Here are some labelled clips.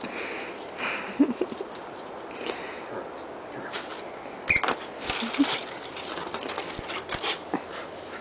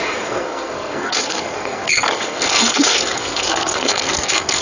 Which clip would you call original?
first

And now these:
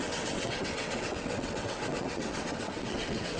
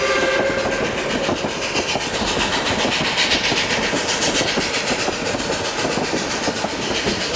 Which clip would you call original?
second